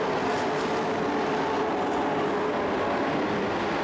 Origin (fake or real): real